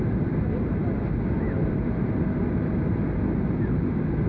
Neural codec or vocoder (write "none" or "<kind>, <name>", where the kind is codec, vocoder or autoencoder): none